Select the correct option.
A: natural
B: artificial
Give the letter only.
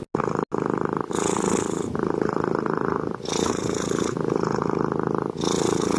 A